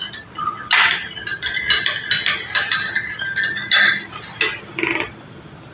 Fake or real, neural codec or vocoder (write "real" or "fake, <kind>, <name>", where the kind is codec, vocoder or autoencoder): real